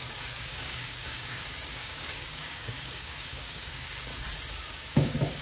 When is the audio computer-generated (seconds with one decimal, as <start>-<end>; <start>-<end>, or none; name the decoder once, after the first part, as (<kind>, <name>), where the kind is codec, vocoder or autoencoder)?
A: 0.0-4.1 (codec, DAC); 4.6-5.4